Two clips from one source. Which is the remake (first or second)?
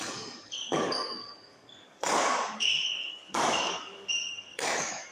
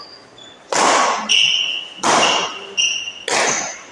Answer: first